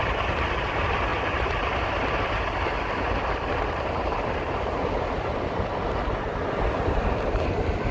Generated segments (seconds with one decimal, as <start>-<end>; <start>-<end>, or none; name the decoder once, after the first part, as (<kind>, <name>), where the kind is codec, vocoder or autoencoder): 1.1-1.8 (vocoder, BigVGAN v2)